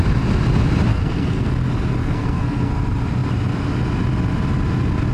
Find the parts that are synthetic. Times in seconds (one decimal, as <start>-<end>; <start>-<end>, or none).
0.9-1.5; 2.0-2.7